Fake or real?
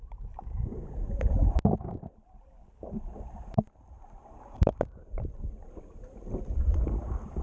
real